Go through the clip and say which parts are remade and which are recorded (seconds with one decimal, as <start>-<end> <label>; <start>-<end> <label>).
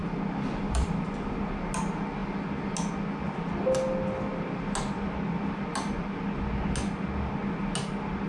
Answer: 0.0-1.5 remade; 1.5-8.3 recorded